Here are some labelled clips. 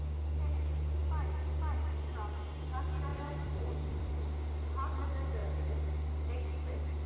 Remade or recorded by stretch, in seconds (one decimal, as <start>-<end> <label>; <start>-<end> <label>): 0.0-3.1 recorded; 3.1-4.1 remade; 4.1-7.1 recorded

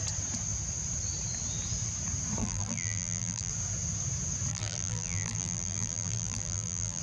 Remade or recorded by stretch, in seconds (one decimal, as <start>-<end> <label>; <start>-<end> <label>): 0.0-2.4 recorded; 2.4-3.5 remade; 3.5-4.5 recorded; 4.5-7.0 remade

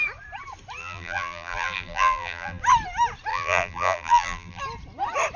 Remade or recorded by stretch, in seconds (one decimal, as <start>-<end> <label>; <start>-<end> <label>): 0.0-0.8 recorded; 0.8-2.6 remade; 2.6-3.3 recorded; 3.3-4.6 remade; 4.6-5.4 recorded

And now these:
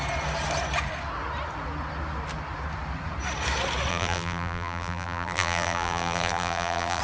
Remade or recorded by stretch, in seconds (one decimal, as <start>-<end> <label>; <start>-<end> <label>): 0.0-3.9 recorded; 3.9-7.0 remade